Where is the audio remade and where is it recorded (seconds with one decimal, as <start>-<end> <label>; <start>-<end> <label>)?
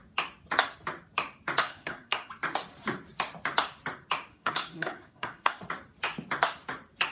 0.0-1.6 recorded; 1.6-2.3 remade; 2.3-4.3 recorded; 4.3-5.6 remade; 5.6-7.1 recorded